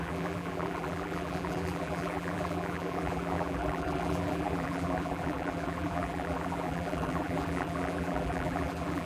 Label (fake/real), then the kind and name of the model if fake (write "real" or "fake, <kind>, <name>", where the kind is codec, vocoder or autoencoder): fake, vocoder, BigVGAN v2